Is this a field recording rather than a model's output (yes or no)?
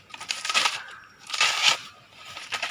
no